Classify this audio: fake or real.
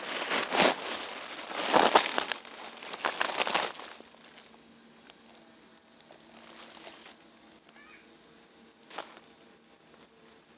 real